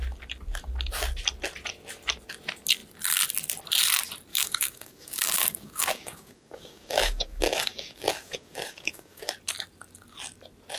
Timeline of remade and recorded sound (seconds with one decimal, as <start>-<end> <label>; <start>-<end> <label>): 0.0-4.3 recorded; 4.3-9.3 remade; 9.3-10.8 recorded